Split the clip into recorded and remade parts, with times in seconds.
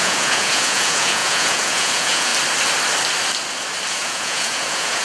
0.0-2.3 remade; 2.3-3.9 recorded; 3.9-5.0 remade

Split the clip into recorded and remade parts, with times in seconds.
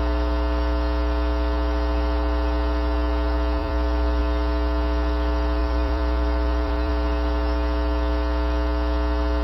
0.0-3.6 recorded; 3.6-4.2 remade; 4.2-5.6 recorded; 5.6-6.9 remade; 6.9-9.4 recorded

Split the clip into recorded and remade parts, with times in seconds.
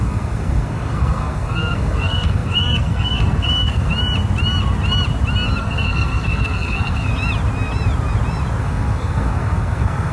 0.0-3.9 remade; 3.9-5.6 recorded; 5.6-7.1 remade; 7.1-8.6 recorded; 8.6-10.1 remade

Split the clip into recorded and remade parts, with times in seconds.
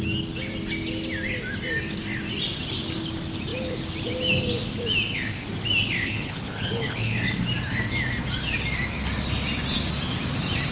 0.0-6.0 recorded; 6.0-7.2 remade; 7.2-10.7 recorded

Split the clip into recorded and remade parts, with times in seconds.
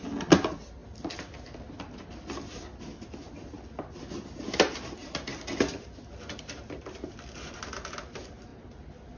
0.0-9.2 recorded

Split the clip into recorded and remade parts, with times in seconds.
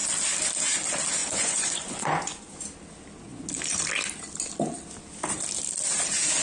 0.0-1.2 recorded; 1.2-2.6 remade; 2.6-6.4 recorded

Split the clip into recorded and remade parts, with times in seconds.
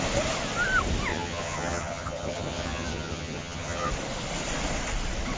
0.0-1.1 recorded; 1.1-3.9 remade; 3.9-5.4 recorded